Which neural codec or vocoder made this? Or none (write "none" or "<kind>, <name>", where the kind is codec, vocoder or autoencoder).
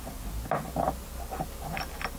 none